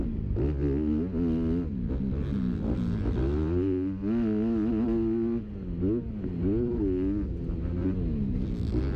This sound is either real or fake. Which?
real